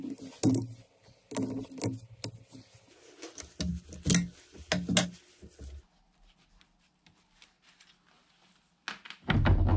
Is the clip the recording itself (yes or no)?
yes